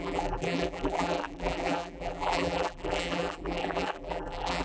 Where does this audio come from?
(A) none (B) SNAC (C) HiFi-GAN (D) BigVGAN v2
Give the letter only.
D